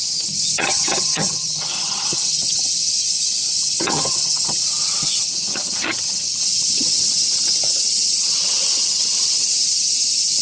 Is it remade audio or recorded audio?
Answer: remade